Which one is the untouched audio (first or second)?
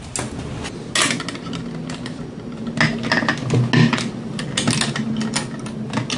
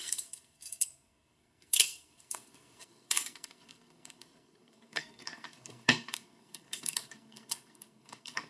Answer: first